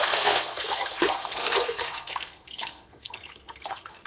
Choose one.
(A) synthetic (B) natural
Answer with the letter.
A